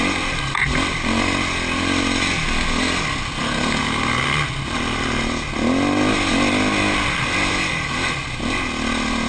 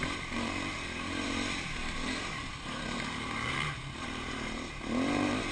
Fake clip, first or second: second